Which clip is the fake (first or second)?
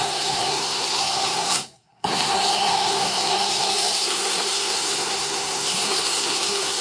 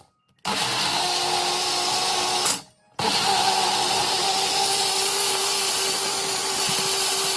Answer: first